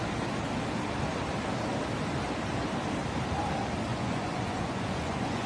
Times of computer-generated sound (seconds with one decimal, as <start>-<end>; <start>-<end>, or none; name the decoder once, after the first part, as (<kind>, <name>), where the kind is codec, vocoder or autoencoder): 3.9-5.5 (vocoder, Vocos)